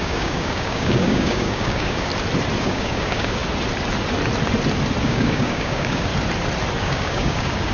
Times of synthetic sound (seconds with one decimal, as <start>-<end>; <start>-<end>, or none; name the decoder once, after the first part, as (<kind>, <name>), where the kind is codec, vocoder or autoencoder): 0.0-2.1 (codec, DAC); 2.6-3.4; 5.0-6.1; 6.8-7.7